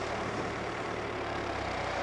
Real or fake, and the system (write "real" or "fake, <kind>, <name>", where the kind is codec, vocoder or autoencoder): fake, vocoder, BigVGAN v2